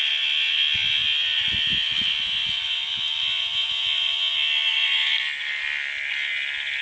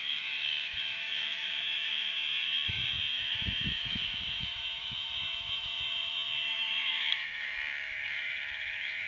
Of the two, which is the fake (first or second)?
second